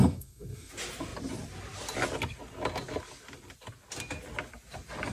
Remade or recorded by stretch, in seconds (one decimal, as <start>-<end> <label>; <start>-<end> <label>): 0.0-0.7 remade; 0.7-5.1 recorded